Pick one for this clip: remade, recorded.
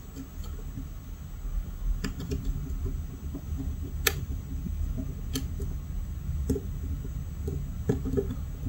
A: recorded